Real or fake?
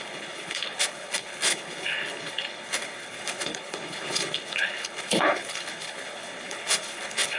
fake